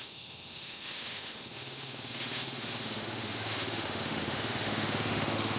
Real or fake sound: fake